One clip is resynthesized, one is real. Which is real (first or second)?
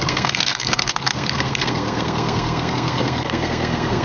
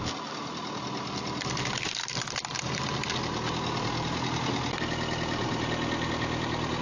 second